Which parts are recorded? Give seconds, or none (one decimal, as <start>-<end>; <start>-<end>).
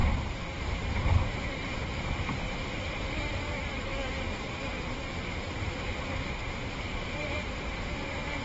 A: 0.0-0.6; 1.6-3.1; 3.9-6.1